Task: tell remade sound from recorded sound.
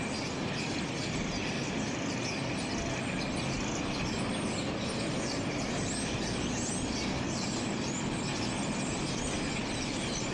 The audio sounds recorded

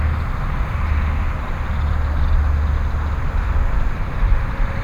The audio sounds recorded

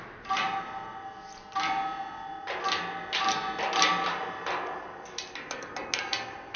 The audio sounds recorded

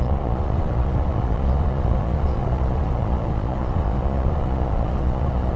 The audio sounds remade